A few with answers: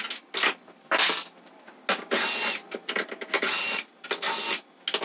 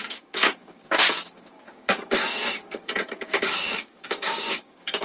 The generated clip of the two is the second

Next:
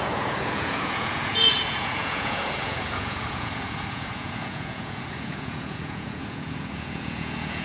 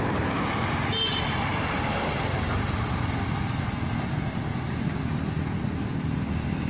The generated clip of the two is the first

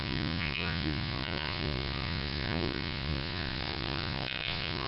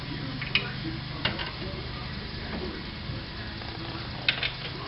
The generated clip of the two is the first